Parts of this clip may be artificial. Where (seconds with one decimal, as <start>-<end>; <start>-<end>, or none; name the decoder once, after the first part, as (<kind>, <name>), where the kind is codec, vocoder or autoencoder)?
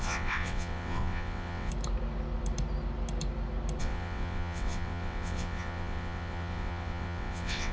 0.0-1.7 (vocoder, WaveNeXt); 3.8-7.7